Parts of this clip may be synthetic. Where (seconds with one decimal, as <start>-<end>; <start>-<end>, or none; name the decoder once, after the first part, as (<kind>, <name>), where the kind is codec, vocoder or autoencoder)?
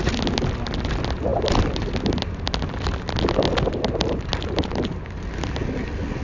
none